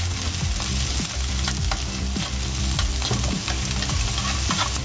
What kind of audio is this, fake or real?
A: real